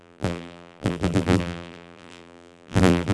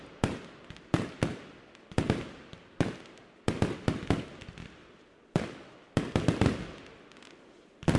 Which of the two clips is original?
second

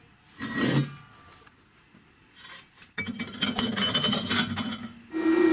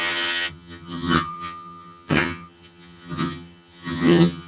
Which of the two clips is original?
first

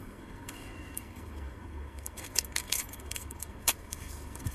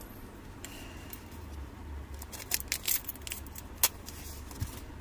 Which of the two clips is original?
second